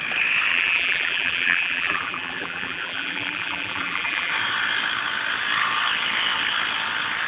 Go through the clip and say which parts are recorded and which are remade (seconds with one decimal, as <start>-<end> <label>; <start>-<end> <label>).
0.0-0.5 recorded; 0.5-4.3 remade; 4.3-7.3 recorded